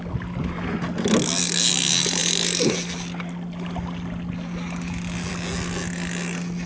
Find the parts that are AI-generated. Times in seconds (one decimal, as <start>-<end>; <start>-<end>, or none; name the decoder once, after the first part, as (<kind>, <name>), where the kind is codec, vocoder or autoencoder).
none